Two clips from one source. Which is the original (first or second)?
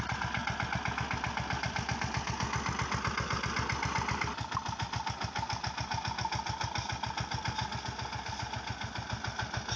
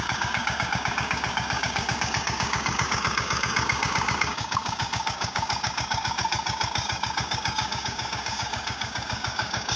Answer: first